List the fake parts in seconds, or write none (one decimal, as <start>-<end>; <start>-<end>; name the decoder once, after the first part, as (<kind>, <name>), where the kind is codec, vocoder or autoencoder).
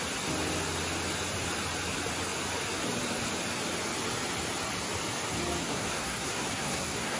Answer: 5.6-7.2 (codec, SNAC)